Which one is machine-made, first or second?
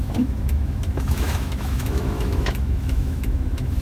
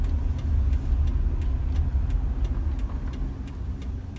first